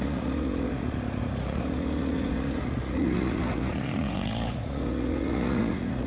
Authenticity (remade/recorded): remade